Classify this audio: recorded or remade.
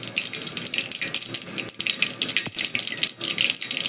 recorded